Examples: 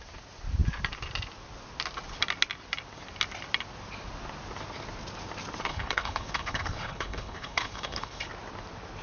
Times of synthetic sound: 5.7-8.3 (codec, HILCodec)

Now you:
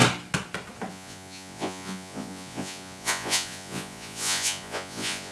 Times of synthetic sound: 0.9-5.3 (vocoder, Vocos)

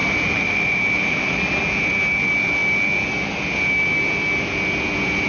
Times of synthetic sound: 0.0-1.6 (vocoder, BigVGAN v2)

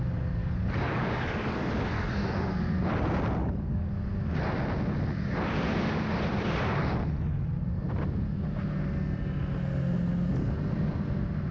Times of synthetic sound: 0.4-1.7 (codec, DAC); 3.4-3.9

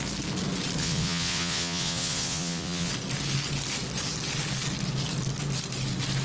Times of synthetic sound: 0.8-2.9 (vocoder, Vocos)

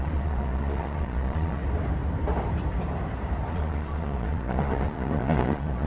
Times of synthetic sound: 0.0-1.6 (vocoder, Vocos); 3.5-5.9

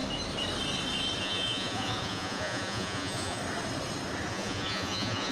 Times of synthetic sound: 1.2-3.4 (vocoder, Vocos); 4.3-5.3